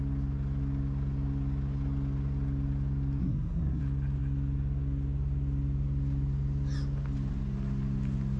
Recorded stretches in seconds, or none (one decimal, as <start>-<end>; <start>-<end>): 0.0-3.2; 3.8-8.4